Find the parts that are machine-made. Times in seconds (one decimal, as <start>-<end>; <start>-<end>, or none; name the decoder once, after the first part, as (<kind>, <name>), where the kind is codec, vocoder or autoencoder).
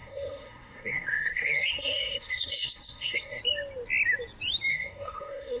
0.0-3.4 (codec, SNAC); 4.7-5.6